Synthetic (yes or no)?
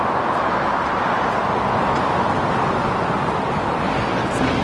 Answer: no